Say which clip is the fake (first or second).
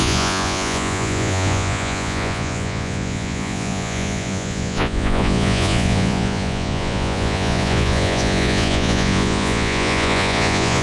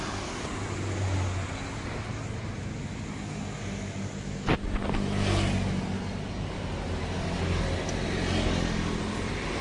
first